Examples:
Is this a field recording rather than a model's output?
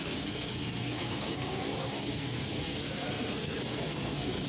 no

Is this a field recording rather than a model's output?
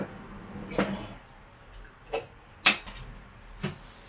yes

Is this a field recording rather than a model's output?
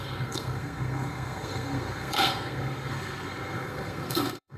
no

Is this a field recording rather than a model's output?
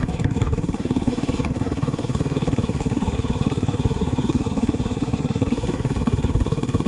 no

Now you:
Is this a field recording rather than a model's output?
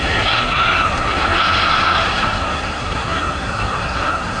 no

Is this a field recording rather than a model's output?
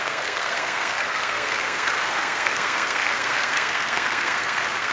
no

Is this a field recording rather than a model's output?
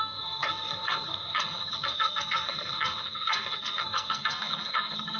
no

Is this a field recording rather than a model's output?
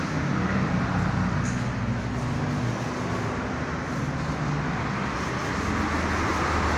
yes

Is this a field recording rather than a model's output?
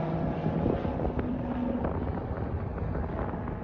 yes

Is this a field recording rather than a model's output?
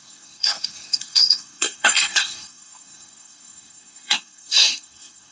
no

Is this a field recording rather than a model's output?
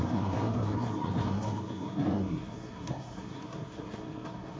no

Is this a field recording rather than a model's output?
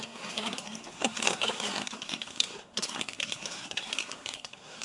no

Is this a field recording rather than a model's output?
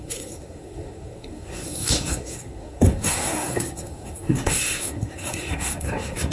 no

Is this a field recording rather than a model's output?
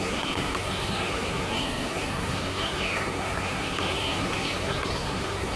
no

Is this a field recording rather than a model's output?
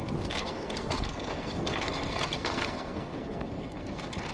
no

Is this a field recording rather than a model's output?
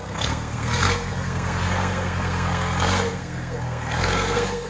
no